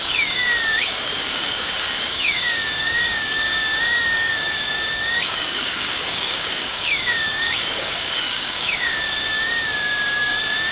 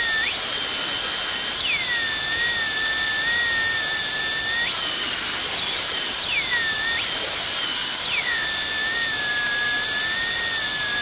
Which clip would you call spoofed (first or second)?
first